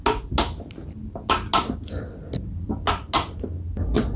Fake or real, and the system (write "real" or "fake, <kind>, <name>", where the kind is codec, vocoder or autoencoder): real